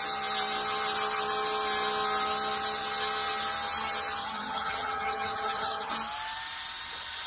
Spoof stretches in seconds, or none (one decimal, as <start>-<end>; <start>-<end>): 4.2-5.9